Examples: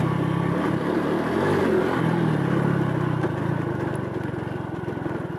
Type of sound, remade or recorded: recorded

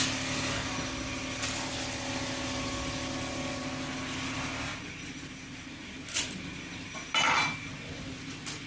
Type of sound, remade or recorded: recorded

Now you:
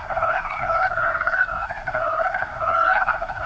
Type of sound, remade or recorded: remade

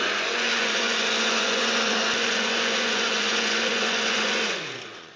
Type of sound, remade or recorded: remade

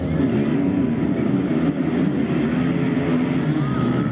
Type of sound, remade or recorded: recorded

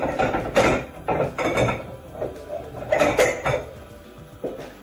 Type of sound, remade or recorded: recorded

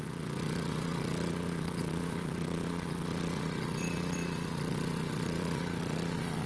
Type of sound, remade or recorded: remade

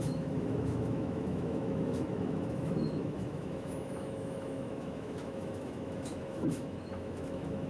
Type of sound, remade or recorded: remade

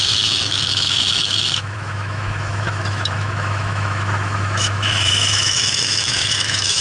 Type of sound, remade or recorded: remade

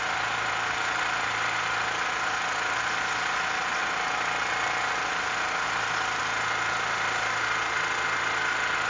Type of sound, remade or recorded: recorded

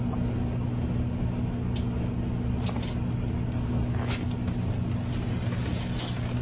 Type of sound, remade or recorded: recorded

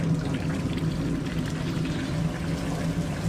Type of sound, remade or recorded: recorded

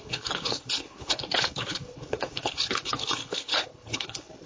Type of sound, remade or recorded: remade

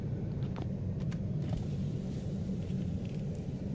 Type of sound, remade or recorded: remade